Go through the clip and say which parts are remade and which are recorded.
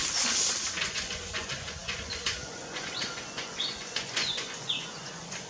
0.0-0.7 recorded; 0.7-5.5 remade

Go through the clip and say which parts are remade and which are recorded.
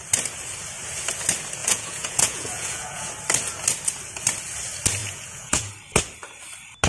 0.0-1.6 recorded; 1.6-3.1 remade; 3.1-5.0 recorded; 5.0-5.7 remade; 5.7-6.9 recorded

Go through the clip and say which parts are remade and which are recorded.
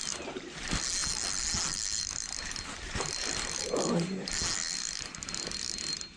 0.0-6.2 recorded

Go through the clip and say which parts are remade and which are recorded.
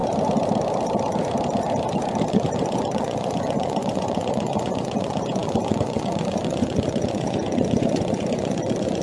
0.0-2.3 recorded; 2.3-9.0 remade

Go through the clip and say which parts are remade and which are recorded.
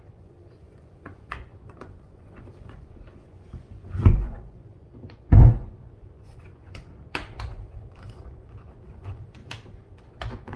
0.0-10.6 remade